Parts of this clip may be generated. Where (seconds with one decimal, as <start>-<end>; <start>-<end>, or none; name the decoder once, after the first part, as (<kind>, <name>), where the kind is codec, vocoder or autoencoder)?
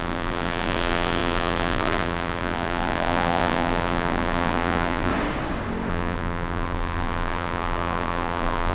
0.0-5.1 (vocoder, BigVGAN v2); 5.9-8.7